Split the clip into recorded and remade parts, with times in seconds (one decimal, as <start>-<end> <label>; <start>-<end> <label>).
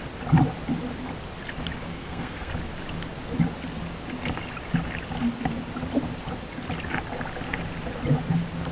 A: 0.0-1.9 recorded; 1.9-2.5 remade; 2.5-8.7 recorded